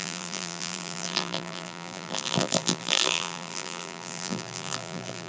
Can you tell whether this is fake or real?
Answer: fake